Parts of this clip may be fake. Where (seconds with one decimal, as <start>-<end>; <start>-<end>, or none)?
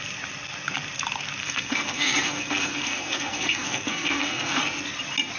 1.4-4.6